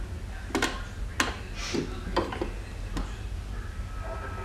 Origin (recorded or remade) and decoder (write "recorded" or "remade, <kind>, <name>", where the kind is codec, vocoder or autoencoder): recorded